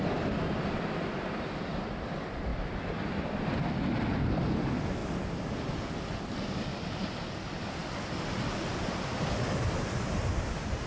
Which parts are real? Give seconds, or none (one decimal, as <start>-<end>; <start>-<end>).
2.5-4.2; 5.0-5.9; 6.7-7.3; 7.8-8.8